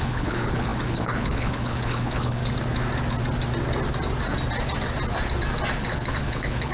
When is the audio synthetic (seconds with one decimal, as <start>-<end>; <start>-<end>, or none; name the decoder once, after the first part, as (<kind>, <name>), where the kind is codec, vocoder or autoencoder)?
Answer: 0.0-2.4 (codec, HILCodec); 5.9-6.7